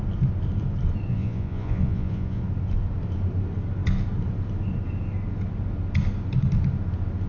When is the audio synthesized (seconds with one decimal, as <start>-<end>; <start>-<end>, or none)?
1.1-2.4